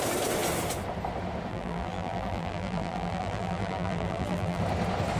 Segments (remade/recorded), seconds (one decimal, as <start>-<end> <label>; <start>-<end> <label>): 0.0-1.5 recorded; 1.5-4.6 remade; 4.6-5.2 recorded